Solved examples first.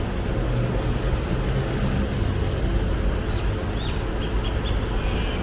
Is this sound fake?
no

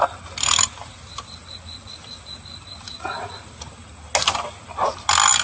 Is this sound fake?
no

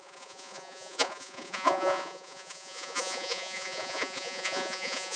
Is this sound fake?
yes